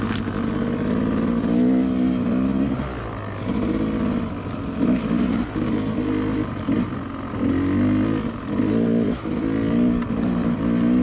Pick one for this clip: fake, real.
real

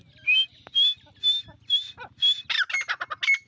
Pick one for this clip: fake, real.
real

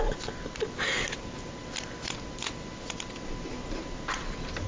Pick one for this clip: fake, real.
real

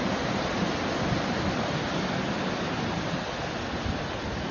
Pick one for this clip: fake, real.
real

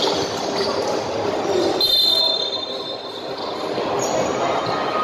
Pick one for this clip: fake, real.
real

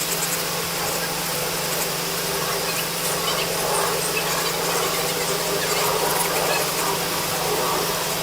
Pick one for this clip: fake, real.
real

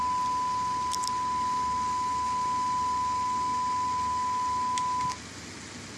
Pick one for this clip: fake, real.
real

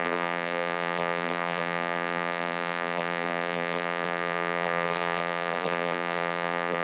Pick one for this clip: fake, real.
fake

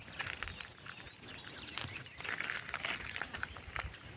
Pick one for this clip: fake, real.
fake